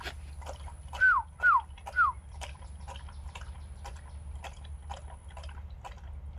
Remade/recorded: recorded